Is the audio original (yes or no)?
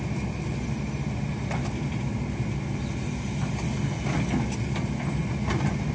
yes